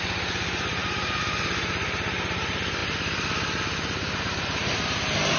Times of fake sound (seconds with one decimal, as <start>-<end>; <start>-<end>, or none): none

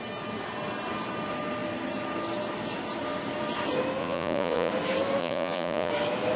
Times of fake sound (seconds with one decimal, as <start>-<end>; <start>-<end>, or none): 4.0-4.7; 5.2-5.9